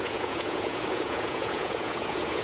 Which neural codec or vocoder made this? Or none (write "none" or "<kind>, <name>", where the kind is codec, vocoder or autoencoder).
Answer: vocoder, Vocos